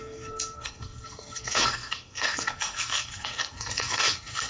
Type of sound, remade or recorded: remade